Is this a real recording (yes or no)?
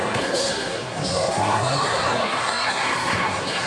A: no